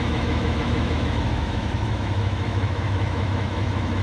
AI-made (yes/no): yes